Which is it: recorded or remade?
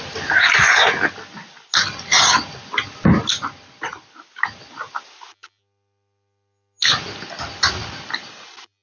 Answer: recorded